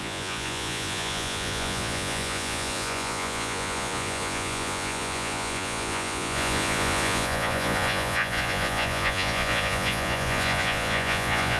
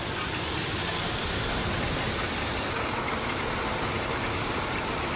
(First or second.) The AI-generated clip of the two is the first